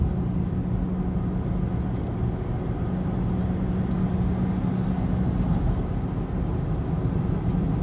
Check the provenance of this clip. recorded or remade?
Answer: recorded